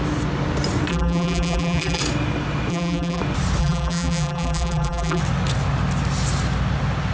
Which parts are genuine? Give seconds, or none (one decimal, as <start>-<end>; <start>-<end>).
0.0-0.9; 2.0-2.7; 3.2-3.6; 5.2-7.1